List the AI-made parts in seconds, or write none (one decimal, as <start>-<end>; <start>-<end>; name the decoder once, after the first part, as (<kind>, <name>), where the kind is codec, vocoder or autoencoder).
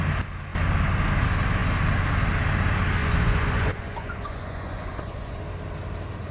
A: 3.0-5.4 (vocoder, Vocos)